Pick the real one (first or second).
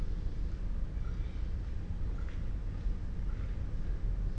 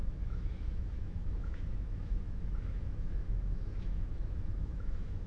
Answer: first